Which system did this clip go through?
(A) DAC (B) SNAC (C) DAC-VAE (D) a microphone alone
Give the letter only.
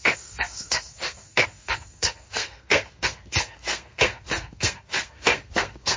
B